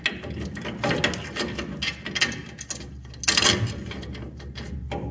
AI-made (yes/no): no